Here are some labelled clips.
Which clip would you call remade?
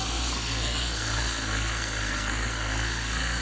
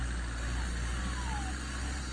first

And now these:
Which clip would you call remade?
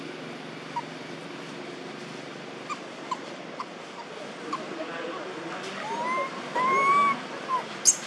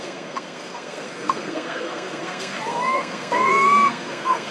second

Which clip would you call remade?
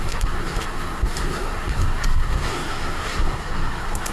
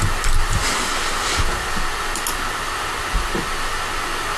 first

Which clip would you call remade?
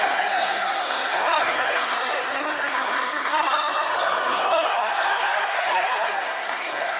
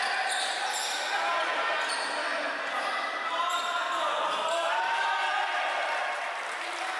first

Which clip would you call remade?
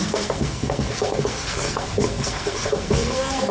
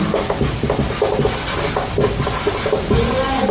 first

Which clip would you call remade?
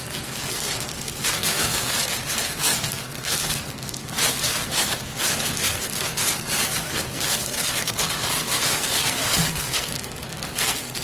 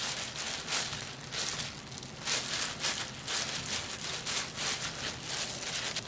first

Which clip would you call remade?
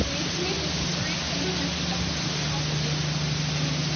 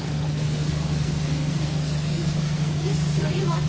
second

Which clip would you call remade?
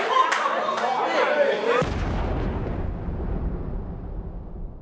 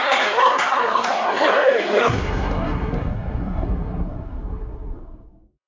second